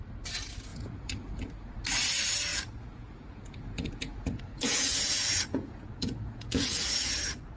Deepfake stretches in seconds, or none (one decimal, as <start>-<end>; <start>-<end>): 0.7-1.3; 2.5-7.1

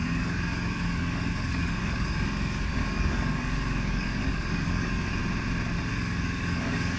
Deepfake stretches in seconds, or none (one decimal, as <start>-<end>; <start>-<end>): 0.0-5.2; 5.9-7.0

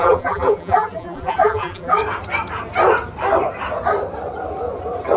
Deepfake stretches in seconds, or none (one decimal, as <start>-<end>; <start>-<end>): 0.0-2.0